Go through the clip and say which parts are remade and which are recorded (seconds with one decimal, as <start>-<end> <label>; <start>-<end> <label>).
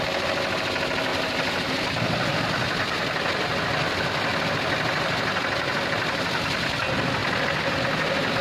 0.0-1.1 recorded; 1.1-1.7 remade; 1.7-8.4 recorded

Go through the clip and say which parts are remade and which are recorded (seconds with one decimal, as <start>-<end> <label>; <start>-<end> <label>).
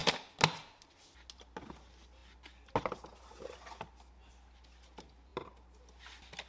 0.0-6.5 recorded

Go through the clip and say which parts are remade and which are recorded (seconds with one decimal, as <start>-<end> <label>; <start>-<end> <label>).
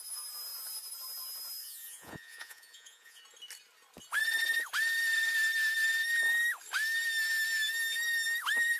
0.0-1.6 recorded; 1.6-3.2 remade; 3.2-8.8 recorded